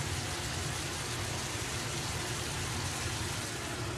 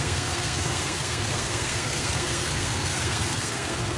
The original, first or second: first